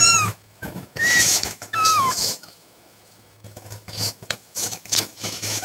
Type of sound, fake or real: fake